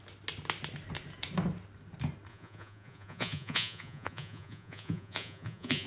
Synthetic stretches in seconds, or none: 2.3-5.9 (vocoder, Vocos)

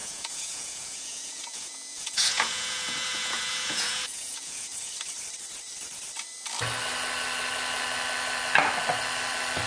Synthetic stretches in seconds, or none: 0.0-4.9 (vocoder, Vocos)

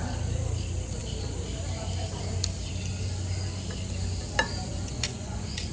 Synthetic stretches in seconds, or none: 4.7-5.7 (vocoder, Vocos)

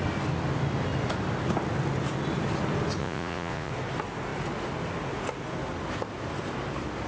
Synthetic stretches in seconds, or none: 3.0-3.7 (vocoder, Vocos)

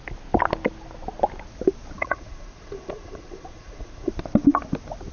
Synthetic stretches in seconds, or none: 2.0-4.1 (vocoder, Vocos)

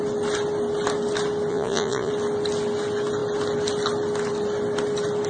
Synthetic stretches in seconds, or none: 1.5-2.1 (vocoder, Vocos)

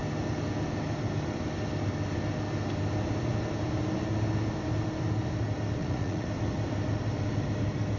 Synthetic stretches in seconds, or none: 5.8-6.3 (vocoder, Vocos)

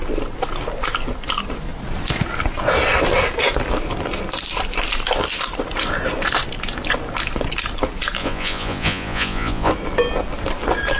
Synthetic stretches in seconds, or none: 8.2-9.7 (vocoder, Vocos)